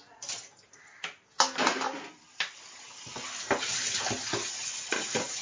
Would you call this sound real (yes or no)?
yes